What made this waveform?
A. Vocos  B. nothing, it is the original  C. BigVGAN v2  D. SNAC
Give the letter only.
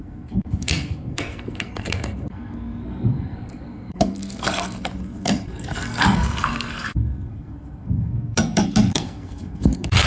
D